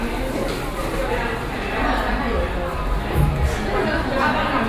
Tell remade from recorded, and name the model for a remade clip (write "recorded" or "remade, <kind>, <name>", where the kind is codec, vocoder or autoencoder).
recorded